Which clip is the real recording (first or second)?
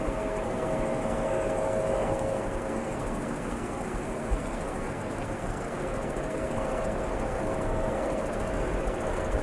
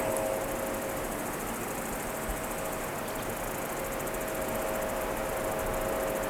second